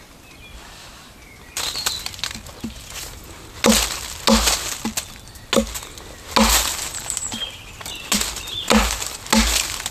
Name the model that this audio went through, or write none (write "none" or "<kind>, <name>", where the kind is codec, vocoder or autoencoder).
none